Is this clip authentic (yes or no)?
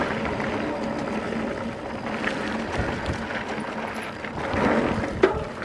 yes